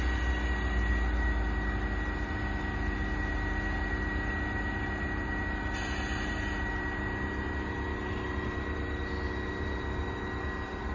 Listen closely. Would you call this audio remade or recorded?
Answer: recorded